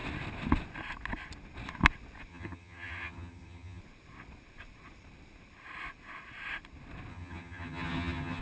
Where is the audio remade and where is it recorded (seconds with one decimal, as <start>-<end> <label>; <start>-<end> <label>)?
0.0-2.3 recorded; 2.3-3.8 remade; 3.8-7.1 recorded; 7.1-8.4 remade